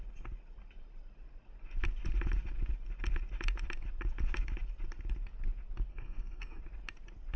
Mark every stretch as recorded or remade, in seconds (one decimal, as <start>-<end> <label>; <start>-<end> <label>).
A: 0.0-5.9 recorded; 5.9-6.6 remade; 6.6-7.4 recorded